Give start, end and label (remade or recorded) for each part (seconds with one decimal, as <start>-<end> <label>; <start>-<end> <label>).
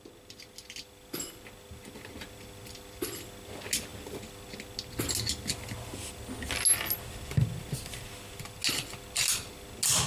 0.0-10.1 recorded